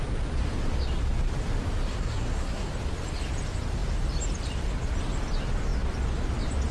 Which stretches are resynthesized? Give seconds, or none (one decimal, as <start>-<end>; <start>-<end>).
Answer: 1.9-2.7